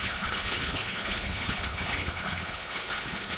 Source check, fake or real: fake